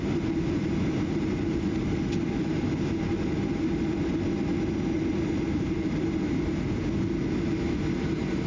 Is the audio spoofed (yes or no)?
no